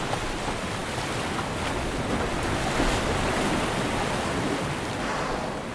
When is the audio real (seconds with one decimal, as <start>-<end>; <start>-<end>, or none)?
0.0-5.7